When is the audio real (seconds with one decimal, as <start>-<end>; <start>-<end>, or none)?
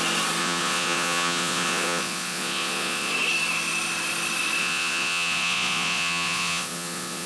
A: 0.0-0.4; 3.1-4.6